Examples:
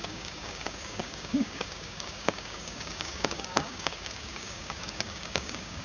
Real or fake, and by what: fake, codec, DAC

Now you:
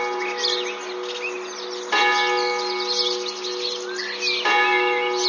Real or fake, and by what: real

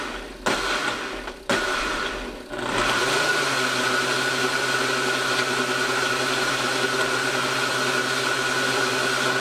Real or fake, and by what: real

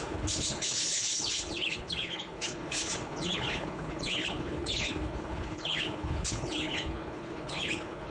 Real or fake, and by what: fake, codec, HILCodec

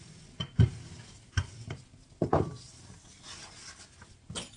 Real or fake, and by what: real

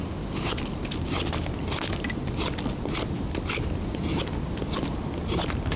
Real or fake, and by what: real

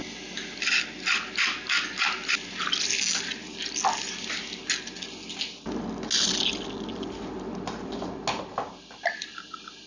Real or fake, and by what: real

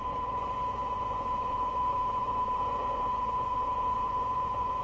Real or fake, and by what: fake, vocoder, Vocos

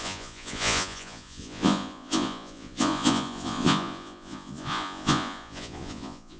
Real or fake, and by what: fake, vocoder, Vocos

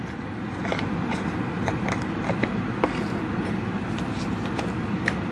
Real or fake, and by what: real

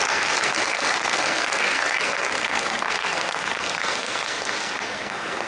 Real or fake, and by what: fake, codec, SNAC